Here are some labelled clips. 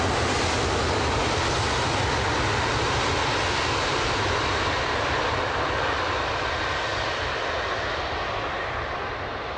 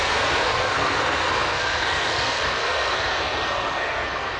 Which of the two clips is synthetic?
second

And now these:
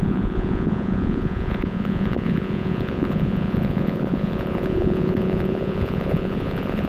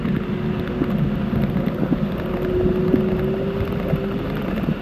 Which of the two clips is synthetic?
first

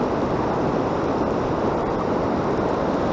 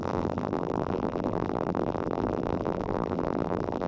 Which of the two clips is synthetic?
second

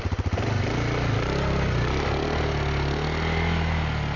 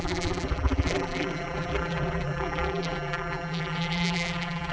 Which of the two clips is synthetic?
second